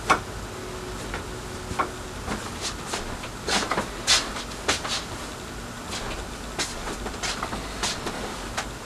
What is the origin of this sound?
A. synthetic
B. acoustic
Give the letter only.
B